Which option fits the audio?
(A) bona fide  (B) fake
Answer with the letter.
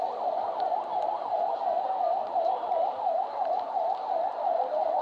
B